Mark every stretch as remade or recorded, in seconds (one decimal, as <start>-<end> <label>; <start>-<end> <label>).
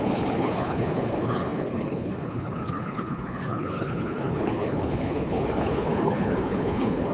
0.0-7.1 remade